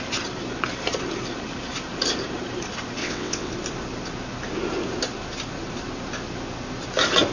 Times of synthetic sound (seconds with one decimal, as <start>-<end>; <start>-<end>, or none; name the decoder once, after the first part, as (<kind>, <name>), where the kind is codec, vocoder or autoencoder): 3.0-3.5 (vocoder, WaveNeXt)